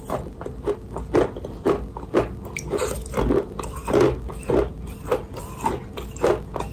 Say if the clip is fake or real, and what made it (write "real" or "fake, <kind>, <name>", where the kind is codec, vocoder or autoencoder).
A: real